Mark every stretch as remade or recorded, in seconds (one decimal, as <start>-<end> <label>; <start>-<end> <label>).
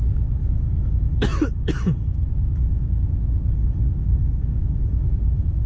0.0-5.7 remade